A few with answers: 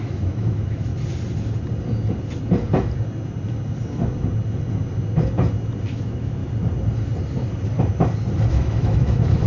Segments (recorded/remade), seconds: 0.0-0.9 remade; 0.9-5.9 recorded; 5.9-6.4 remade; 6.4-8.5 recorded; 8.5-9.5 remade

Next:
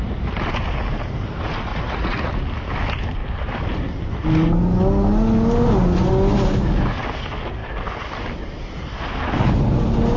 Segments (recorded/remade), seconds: 0.0-1.7 recorded; 1.7-2.3 remade; 2.3-10.2 recorded

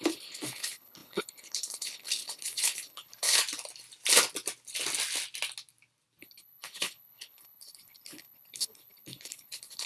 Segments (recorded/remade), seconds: 0.0-3.4 remade; 3.4-6.2 recorded; 6.2-9.9 remade

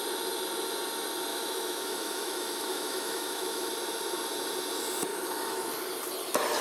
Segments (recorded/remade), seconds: 0.0-1.3 recorded; 1.3-3.7 remade; 3.7-5.1 recorded; 5.1-5.7 remade; 5.7-6.6 recorded